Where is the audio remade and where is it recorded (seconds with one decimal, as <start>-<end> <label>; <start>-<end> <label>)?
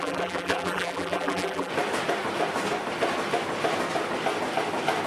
0.0-1.7 remade; 1.7-5.1 recorded